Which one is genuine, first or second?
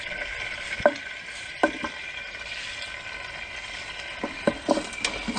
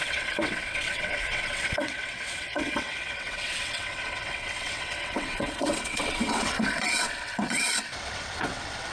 first